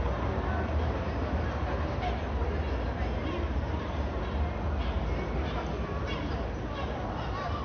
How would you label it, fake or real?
real